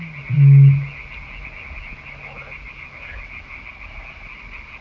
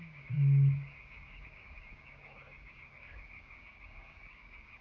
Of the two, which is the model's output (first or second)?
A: second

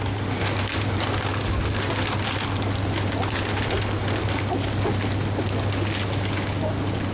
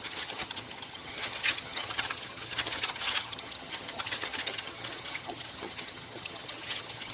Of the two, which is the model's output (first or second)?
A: second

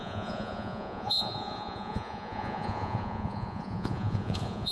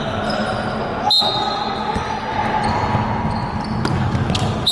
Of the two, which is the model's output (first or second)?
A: first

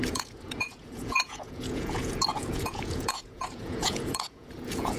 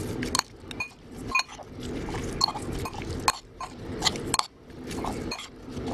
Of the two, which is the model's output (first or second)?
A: first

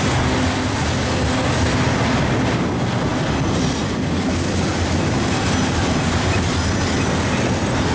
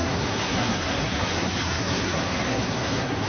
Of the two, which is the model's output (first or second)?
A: second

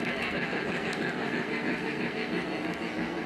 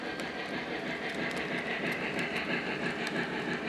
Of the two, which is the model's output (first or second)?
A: first